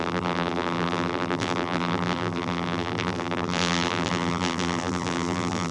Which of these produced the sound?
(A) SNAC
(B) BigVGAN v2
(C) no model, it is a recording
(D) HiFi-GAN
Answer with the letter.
B